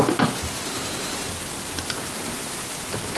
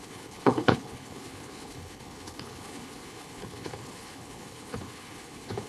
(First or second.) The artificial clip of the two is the second